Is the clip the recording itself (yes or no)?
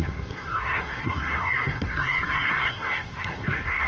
no